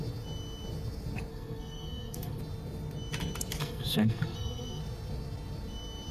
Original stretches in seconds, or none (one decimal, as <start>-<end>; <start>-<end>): 0.0-1.3; 2.4-3.6; 4.8-6.1